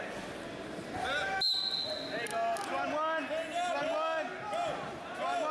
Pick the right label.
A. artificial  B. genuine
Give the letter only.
B